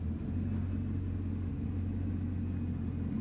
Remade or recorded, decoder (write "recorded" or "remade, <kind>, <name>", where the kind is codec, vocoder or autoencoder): recorded